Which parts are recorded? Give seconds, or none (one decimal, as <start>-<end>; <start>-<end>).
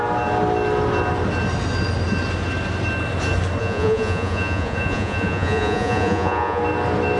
0.0-3.6; 6.6-7.2